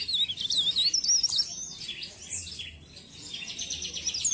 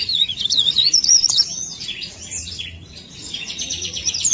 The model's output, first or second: second